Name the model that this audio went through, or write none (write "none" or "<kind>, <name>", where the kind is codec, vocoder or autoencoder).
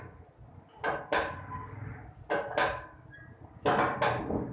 none